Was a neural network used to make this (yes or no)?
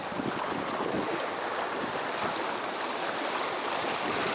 no